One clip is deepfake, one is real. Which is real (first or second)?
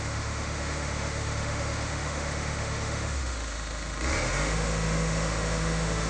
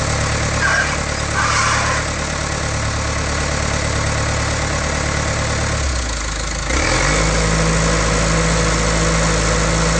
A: second